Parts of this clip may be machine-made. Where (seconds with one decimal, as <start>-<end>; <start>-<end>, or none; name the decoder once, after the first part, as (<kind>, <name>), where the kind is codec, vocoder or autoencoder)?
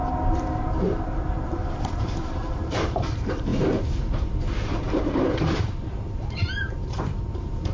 0.0-7.7 (vocoder, BigVGAN v2)